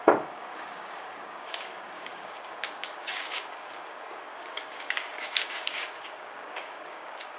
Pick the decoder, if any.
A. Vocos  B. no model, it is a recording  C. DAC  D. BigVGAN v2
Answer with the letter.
C